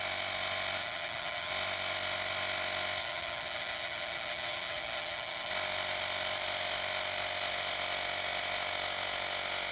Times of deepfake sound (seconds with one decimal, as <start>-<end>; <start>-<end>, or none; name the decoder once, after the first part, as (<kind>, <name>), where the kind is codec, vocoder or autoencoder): 0.8-1.5 (vocoder, HiFi-GAN); 3.0-5.5